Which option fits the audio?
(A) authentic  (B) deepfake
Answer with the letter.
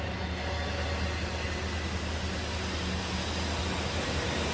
A